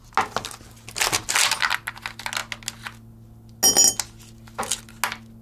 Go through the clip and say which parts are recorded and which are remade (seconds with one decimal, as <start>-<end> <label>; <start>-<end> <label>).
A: 0.0-5.4 recorded